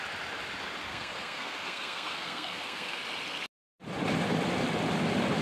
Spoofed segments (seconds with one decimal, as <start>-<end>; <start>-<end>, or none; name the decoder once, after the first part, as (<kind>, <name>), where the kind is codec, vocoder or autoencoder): 0.9-3.0 (codec, SNAC)